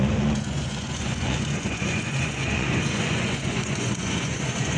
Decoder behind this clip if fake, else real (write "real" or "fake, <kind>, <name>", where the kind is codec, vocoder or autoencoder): fake, vocoder, Vocos